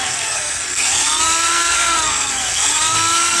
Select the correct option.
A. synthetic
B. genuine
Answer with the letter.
A